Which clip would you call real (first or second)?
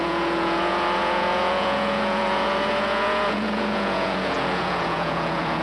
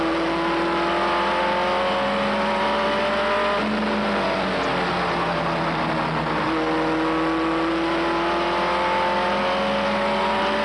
second